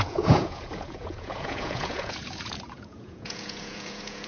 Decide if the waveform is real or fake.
fake